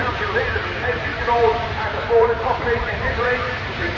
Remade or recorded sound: remade